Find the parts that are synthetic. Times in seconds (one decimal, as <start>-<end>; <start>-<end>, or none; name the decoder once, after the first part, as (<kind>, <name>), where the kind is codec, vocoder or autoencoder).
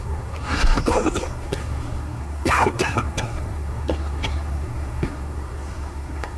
0.0-6.4 (codec, SNAC)